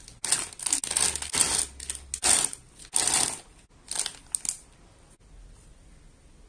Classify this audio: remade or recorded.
recorded